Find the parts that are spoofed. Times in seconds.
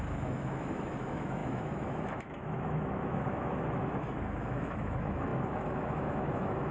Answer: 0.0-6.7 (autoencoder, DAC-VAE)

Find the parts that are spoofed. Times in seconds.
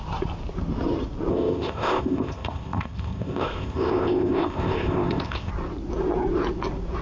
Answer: 1.3-5.5 (codec, ZipCodec)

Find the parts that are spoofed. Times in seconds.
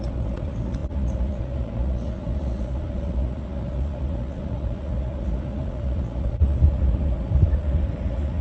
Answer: 0.0-8.4 (vocoder, Vocos)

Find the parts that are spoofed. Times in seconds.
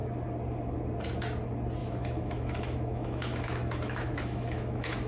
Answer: 1.8-5.1 (autoencoder, DAC-VAE)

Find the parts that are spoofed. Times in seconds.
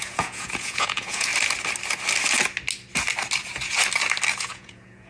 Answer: 0.0-1.3 (vocoder, Vocos); 4.4-5.1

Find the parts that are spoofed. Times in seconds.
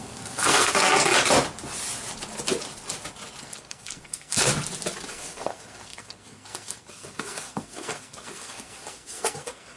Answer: 0.0-1.1 (codec, SNAC); 3.4-4.5; 5.1-9.8